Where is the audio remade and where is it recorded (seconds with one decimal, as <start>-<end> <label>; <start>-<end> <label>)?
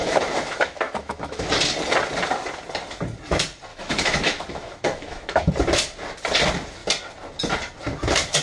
0.0-1.5 remade; 1.5-3.7 recorded; 3.7-5.5 remade; 5.5-8.4 recorded